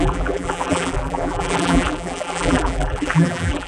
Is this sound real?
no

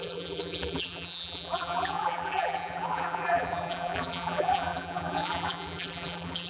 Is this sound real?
no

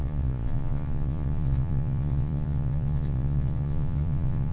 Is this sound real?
no